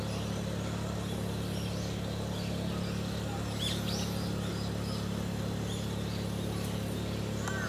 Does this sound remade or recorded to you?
recorded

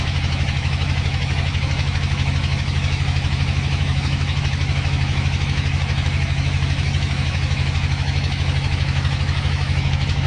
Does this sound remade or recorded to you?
remade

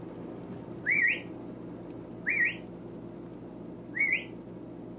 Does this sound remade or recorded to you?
recorded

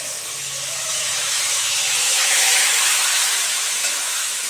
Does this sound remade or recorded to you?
remade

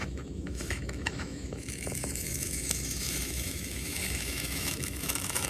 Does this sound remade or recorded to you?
remade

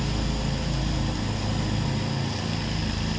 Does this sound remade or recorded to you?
recorded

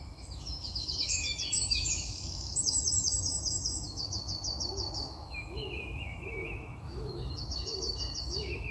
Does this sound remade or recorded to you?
remade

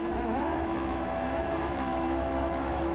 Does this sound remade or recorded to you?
remade